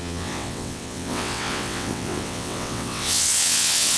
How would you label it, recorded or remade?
remade